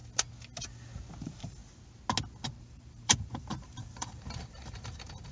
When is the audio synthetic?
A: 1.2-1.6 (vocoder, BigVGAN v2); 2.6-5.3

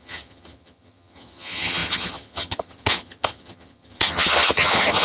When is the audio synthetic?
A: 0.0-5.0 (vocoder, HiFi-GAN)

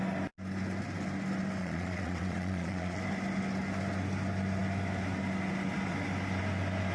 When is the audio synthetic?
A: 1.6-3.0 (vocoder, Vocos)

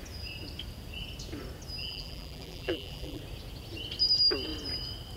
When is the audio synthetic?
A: 1.8-3.2 (vocoder, BigVGAN v2)

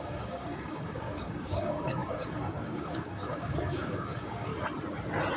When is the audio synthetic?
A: 0.0-4.5 (codec, DAC)